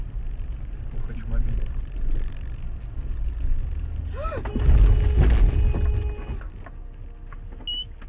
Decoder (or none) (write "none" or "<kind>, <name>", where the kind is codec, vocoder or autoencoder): none